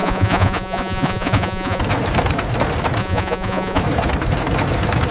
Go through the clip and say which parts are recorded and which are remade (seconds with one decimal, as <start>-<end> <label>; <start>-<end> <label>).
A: 0.0-1.8 remade; 1.8-3.0 recorded; 3.0-3.8 remade; 3.8-5.1 recorded